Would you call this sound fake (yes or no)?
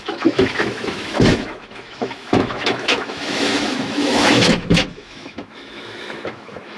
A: yes